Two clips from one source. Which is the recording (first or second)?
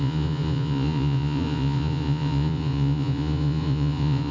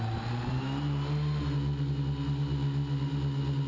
second